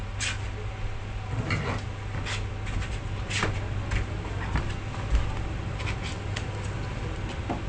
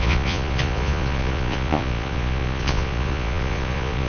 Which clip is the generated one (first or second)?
second